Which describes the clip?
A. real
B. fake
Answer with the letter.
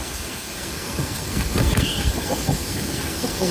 B